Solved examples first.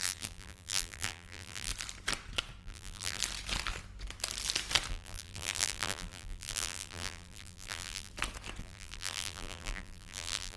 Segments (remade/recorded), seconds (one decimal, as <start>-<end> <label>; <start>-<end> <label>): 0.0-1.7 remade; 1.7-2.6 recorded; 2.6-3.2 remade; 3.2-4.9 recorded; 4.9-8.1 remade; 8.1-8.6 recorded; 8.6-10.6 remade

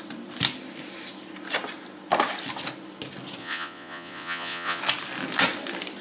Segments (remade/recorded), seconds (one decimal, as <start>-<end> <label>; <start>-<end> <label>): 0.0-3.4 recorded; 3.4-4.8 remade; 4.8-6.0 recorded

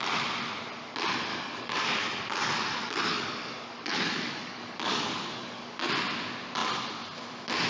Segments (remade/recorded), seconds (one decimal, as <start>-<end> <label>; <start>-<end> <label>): 0.0-1.3 recorded; 1.3-5.9 remade; 5.9-7.7 recorded

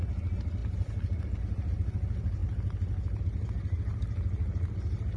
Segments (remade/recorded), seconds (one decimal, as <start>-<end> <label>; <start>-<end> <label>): 0.0-5.2 recorded